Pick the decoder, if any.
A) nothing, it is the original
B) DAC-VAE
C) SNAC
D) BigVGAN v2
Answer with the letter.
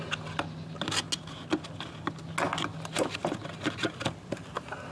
A